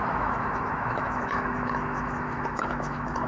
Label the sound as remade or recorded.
remade